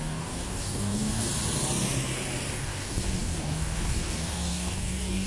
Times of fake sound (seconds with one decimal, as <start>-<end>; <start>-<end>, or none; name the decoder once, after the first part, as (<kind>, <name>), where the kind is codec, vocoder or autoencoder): 0.0-1.3 (codec, DAC); 2.5-5.3